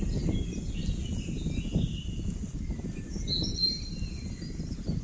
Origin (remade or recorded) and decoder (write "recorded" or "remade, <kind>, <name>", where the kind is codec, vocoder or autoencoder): recorded